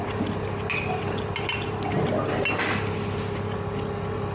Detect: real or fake real